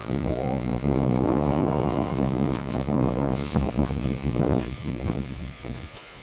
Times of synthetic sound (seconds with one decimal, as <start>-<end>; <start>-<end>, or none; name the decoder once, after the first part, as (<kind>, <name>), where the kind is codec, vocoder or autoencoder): 0.0-6.2 (vocoder, Vocos)